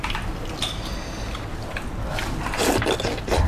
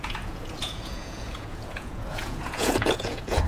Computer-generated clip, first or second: second